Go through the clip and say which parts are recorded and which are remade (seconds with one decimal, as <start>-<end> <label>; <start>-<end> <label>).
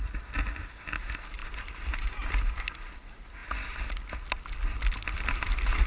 0.0-5.9 recorded